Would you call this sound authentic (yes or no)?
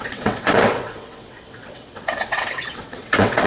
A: no